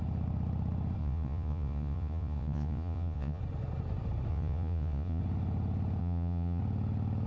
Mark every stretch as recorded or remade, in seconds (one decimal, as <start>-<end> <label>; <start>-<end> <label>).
0.0-1.0 recorded; 1.0-3.4 remade; 3.4-4.3 recorded; 4.3-5.2 remade; 5.2-6.0 recorded; 6.0-6.6 remade; 6.6-7.3 recorded